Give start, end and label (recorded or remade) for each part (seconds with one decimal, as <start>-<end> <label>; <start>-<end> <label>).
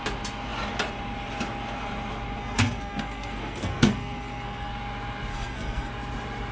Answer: 0.0-2.4 recorded; 2.4-4.7 remade; 4.7-5.3 recorded; 5.3-5.9 remade; 5.9-6.5 recorded